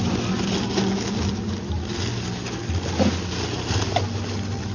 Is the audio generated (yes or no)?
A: no